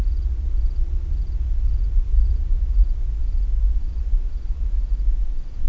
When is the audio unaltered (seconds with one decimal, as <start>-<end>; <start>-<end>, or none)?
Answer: 0.0-5.7